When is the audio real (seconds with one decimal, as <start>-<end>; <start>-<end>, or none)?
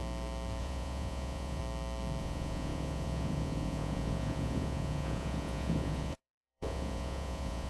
0.0-0.6; 1.6-2.2